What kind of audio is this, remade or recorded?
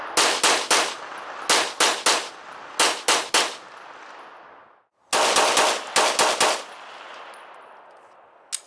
recorded